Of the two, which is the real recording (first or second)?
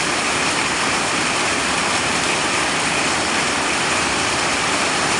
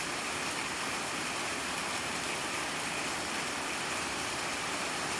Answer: second